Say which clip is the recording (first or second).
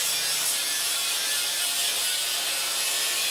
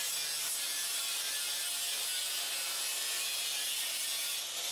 second